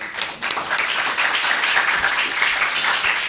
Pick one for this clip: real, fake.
real